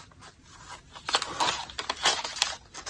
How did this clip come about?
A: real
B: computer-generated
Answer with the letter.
A